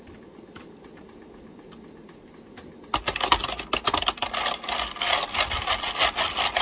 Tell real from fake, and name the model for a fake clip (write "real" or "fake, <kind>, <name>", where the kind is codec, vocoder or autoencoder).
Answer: real